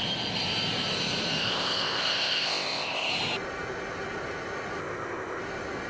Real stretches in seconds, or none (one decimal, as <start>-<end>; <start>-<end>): 0.0-1.4; 3.1-4.8; 5.4-5.9